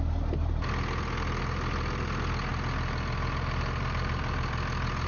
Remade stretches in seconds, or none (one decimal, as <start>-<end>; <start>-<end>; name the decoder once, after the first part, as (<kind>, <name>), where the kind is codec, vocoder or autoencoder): none